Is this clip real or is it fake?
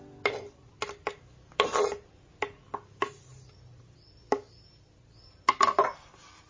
real